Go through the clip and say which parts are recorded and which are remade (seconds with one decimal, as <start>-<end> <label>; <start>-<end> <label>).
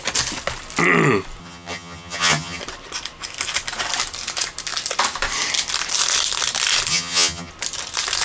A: 0.0-1.4 recorded; 1.4-2.6 remade; 2.6-6.9 recorded; 6.9-7.5 remade; 7.5-8.2 recorded